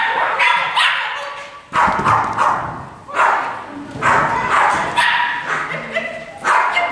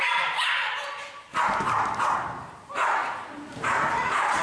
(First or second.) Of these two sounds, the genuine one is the first